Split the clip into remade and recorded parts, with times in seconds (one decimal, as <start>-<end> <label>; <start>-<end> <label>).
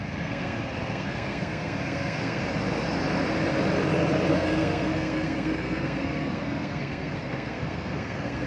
0.0-2.4 remade; 2.4-4.3 recorded; 4.3-8.5 remade